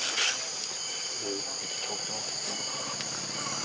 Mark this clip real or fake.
real